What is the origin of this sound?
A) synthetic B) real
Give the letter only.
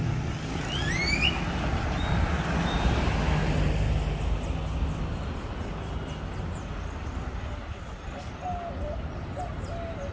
B